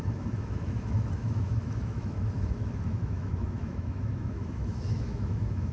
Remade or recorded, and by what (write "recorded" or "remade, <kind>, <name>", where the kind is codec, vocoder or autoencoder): remade, autoencoder, DAC-VAE